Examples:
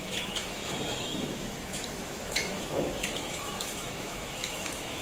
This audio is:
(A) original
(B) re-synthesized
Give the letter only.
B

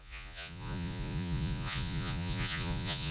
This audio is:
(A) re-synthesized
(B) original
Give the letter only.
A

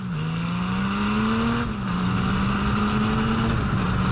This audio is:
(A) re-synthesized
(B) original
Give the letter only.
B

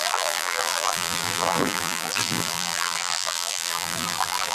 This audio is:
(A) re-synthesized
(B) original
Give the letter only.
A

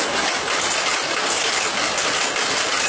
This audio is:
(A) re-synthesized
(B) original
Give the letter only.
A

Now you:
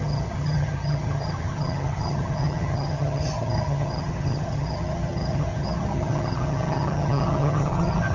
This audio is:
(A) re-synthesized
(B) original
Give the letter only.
A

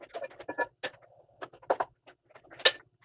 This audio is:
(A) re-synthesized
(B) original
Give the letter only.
B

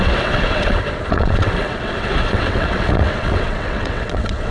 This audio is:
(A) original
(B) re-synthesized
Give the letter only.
B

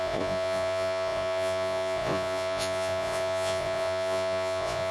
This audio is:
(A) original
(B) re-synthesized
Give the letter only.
B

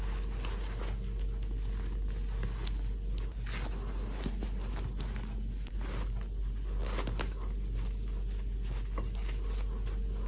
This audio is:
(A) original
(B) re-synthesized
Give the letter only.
A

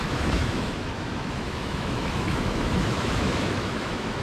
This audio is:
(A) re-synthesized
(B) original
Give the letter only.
A